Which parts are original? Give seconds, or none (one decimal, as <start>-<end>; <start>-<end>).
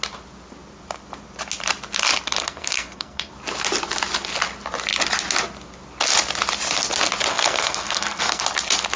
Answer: 0.0-2.4; 3.3-7.3; 8.4-9.0